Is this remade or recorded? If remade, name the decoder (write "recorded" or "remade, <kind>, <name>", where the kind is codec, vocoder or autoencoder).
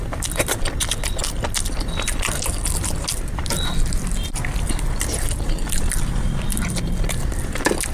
recorded